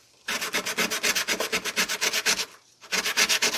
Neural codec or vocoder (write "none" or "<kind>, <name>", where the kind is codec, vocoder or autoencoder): none